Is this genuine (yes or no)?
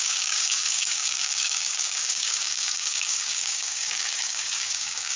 no